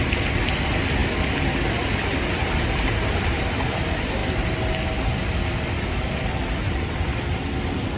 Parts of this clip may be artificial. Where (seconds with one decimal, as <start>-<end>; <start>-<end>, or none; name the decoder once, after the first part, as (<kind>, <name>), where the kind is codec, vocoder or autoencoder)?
none